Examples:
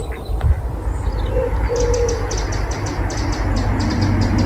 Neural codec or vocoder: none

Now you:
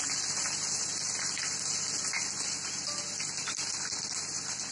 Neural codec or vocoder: none